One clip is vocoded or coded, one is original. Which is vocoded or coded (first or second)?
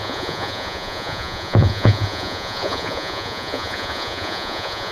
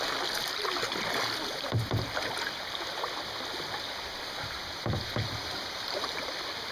first